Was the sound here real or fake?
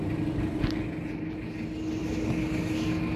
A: real